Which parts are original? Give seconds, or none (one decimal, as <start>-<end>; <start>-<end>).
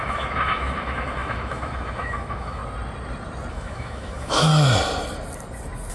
2.6-3.5; 4.5-5.9